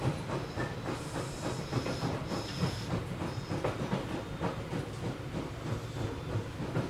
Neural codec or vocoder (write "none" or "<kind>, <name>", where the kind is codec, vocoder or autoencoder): none